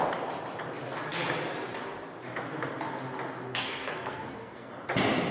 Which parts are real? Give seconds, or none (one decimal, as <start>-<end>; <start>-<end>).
0.0-3.5; 4.7-5.3